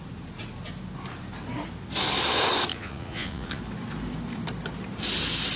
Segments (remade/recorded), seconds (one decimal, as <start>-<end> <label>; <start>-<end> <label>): 0.0-2.7 recorded; 2.7-3.6 remade; 3.6-5.6 recorded